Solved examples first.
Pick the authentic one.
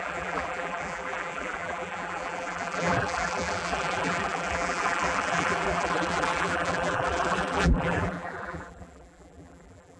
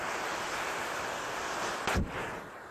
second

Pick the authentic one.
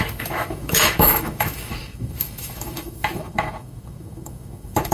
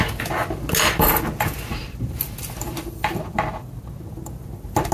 second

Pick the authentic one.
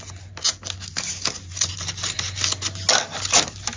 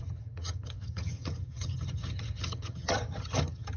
first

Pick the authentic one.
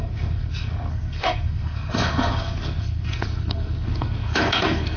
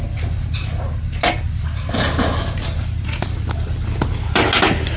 second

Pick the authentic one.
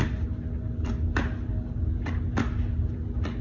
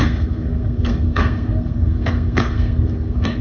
first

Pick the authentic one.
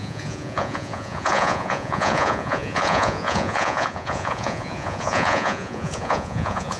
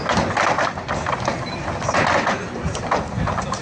second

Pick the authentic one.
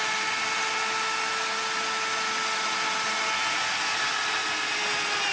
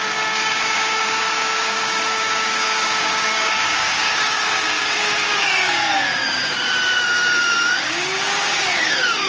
first